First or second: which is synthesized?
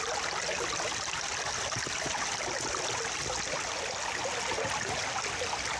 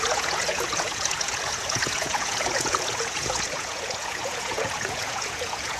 second